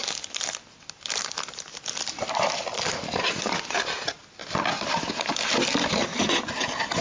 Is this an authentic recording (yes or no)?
yes